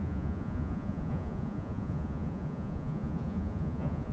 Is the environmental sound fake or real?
fake